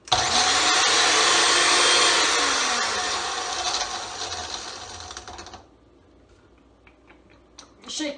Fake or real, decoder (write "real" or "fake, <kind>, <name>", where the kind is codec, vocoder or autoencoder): real